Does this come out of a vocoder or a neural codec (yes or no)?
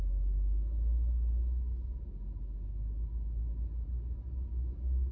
no